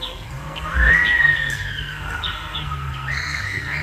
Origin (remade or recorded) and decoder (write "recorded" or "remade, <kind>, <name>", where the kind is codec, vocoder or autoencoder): remade, codec, SNAC